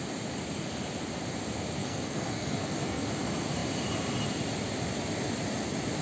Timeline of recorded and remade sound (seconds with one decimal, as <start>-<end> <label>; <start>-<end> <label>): 0.0-1.8 recorded; 1.8-3.1 remade; 3.1-6.0 recorded